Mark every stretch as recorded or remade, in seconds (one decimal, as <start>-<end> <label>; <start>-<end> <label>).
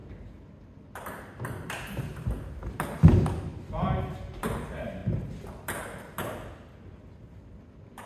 0.0-8.1 recorded